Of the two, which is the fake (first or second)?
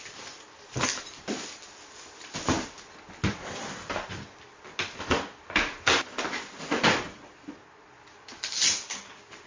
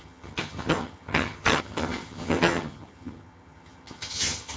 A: second